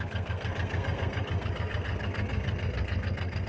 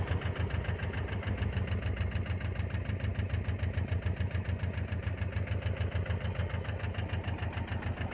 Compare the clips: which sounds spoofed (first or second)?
first